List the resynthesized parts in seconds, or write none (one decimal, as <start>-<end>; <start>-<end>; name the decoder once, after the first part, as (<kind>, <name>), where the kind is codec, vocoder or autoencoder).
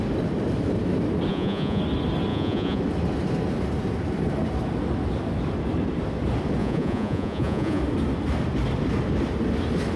1.3-1.8 (vocoder, Vocos); 2.3-2.8; 6.6-7.8